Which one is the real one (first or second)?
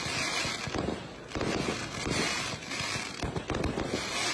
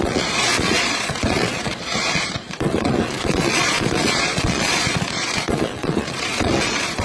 first